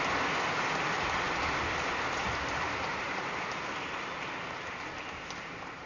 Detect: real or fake real